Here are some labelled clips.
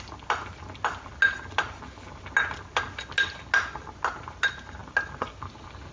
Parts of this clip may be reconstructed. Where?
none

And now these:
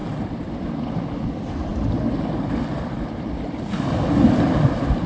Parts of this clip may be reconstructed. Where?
none

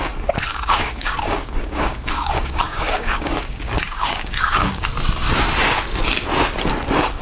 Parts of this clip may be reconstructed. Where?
0.5-4.8 (codec, DAC)